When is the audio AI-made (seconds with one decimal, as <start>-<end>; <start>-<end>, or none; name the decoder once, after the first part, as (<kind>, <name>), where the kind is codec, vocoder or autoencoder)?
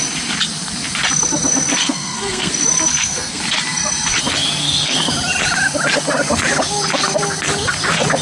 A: 1.8-2.5 (codec, SNAC); 2.9-3.4; 4.6-5.1